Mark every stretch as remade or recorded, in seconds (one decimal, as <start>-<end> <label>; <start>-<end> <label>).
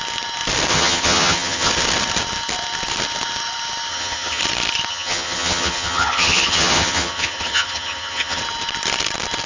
0.0-0.7 recorded; 0.7-1.7 remade; 1.7-3.9 recorded; 3.9-4.4 remade; 4.4-4.9 recorded; 4.9-8.4 remade; 8.4-9.5 recorded